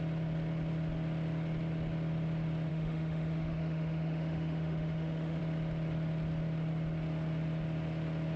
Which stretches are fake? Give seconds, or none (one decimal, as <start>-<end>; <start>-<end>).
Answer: 2.7-5.4